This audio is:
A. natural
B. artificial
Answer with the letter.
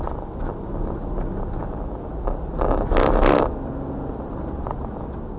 A